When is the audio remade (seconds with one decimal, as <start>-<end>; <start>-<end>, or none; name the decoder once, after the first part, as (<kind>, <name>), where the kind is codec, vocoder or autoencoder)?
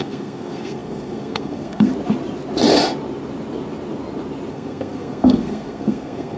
0.0-1.9 (codec, SNAC); 4.5-6.4